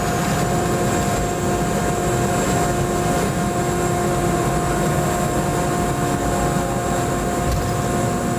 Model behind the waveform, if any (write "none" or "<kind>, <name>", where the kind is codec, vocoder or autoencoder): none